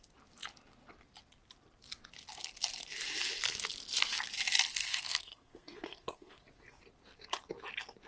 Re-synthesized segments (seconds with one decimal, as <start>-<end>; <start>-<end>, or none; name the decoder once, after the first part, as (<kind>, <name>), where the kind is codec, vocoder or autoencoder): 4.8-6.5 (codec, SNAC)